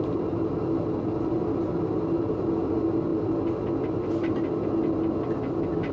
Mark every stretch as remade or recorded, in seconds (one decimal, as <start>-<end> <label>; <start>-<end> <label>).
0.0-5.9 recorded